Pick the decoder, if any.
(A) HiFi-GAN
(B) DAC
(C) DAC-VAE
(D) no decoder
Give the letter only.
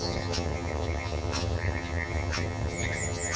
A